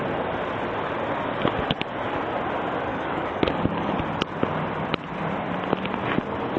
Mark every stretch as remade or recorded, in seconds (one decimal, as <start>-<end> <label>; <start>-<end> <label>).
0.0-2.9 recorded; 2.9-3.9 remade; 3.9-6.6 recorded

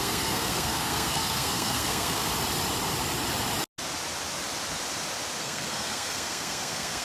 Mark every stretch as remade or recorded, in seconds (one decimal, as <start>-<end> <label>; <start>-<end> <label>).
0.0-2.3 remade; 2.3-5.4 recorded; 5.4-7.0 remade

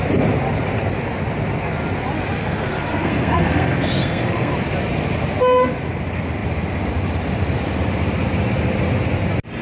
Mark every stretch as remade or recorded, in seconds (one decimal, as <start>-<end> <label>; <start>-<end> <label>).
0.0-2.4 recorded; 2.4-4.5 remade; 4.5-9.6 recorded

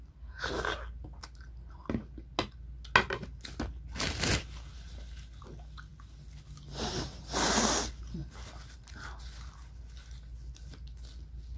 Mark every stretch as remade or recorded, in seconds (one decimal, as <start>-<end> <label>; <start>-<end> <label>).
0.0-11.6 recorded

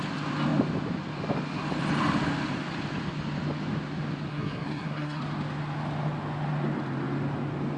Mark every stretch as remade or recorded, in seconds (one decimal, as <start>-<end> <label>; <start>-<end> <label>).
0.0-4.3 recorded; 4.3-5.2 remade; 5.2-7.8 recorded

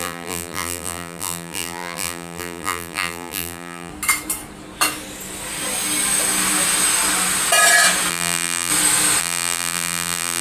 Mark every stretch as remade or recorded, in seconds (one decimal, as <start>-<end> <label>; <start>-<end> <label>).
0.0-3.9 remade; 3.9-8.1 recorded; 8.1-8.7 remade; 8.7-9.2 recorded; 9.2-10.4 remade

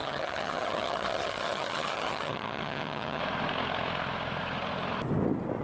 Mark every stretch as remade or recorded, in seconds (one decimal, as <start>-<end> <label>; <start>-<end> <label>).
0.0-3.2 remade; 3.2-5.6 recorded